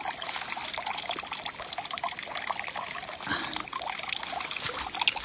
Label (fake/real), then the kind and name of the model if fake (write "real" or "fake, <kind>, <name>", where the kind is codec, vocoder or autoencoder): real